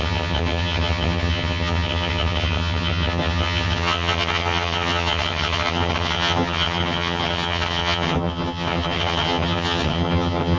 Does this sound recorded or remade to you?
remade